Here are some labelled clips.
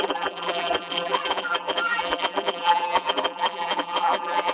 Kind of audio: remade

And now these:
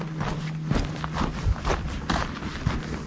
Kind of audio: remade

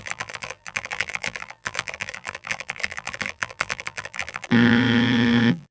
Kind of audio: remade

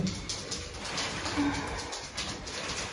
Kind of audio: recorded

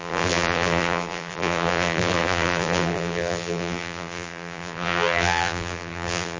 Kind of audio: remade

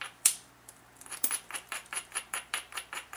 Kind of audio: remade